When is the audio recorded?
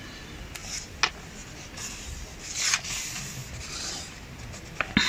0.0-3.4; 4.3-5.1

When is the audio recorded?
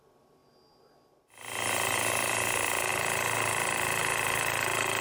0.0-5.0